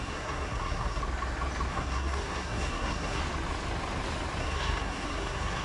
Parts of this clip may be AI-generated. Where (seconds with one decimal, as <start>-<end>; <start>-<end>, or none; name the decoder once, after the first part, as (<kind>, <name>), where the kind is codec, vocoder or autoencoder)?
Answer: 0.0-1.0 (codec, SNAC); 1.7-3.2; 4.4-5.6